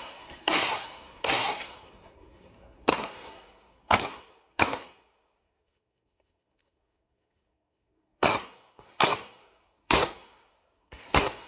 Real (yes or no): no